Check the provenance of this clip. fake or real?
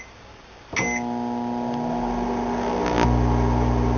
real